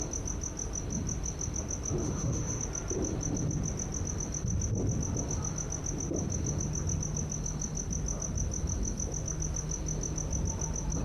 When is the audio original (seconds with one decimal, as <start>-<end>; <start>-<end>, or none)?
0.0-2.0; 2.6-11.0